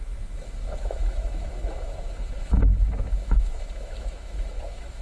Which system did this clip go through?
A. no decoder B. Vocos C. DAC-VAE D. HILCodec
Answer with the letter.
C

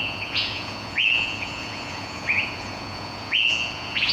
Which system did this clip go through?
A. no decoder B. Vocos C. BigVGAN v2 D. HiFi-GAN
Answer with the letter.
B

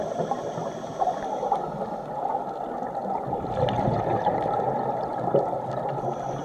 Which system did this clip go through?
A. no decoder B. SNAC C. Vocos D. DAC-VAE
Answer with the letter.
A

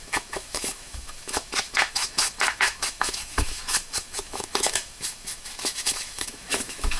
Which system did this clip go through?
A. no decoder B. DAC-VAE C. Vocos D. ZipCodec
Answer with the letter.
B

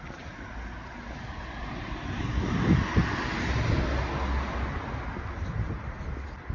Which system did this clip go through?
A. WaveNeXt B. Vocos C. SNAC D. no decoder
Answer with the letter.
D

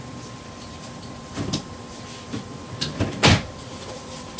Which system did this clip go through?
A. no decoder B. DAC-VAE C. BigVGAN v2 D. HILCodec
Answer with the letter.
C